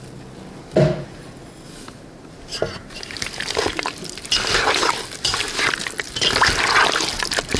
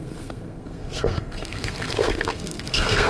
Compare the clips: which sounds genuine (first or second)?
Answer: first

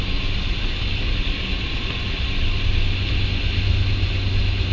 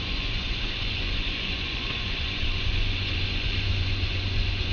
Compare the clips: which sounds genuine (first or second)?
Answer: first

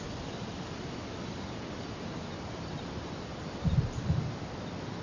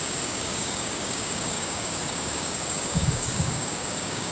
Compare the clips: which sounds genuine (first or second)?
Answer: first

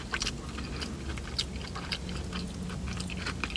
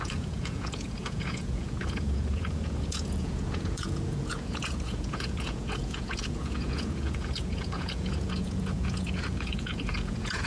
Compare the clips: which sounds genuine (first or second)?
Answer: first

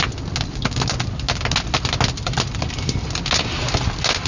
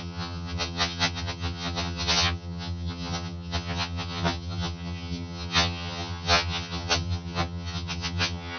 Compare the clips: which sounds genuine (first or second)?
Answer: first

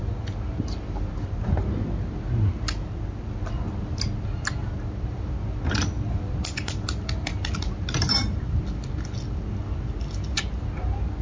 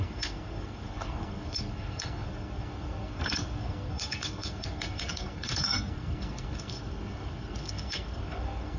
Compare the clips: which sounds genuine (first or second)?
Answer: first